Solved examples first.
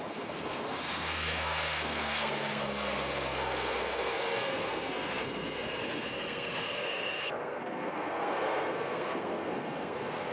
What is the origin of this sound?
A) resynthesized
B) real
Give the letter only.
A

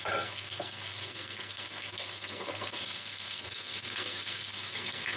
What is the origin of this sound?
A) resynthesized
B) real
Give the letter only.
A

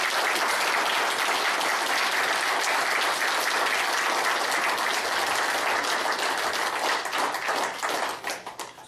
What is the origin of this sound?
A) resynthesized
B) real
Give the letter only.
B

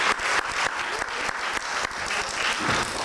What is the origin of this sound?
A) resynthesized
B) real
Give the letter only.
B